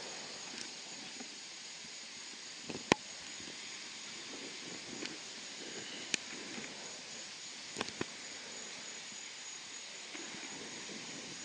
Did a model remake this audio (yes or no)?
no